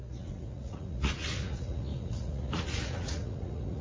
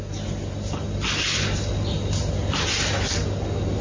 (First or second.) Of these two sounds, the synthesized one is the first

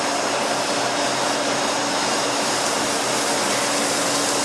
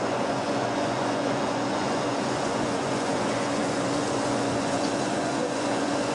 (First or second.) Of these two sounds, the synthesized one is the second